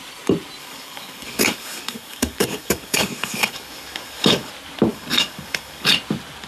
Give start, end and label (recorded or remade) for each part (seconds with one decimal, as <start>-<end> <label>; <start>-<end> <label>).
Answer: 0.0-0.6 recorded; 0.6-4.5 remade; 4.5-4.9 recorded; 4.9-5.9 remade; 5.9-6.5 recorded